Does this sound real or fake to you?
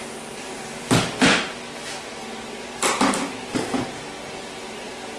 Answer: real